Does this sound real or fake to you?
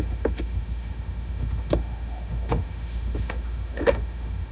fake